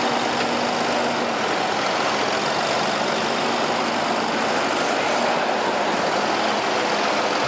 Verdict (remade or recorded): recorded